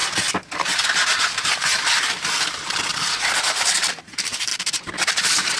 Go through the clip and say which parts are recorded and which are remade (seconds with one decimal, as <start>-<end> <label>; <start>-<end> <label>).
0.0-1.2 recorded; 1.2-5.6 remade